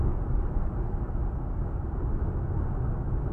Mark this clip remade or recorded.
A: recorded